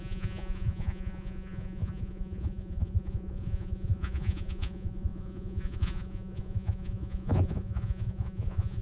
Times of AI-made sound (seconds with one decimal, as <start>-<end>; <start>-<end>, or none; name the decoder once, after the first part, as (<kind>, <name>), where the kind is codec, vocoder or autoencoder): 0.0-8.8 (vocoder, Vocos)